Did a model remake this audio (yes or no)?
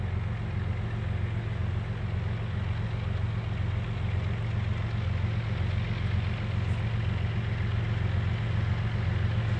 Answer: no